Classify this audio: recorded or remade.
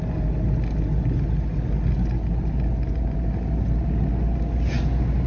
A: recorded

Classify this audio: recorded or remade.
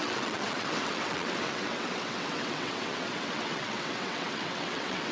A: remade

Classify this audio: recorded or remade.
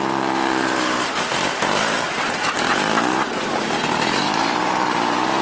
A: remade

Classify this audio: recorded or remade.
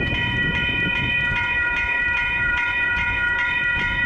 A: remade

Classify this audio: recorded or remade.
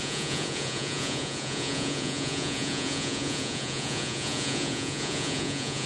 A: remade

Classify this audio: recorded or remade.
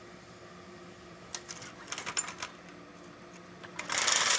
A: recorded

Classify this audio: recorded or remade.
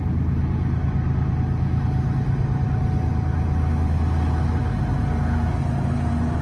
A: recorded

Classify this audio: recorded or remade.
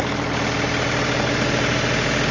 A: recorded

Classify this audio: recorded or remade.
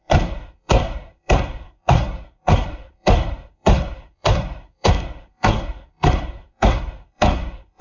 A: remade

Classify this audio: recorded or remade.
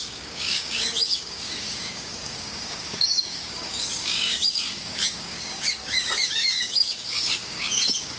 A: remade